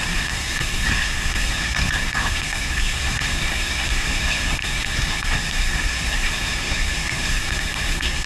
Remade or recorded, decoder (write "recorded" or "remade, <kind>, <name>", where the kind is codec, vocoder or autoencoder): remade, codec, SNAC